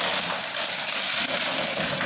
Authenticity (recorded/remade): recorded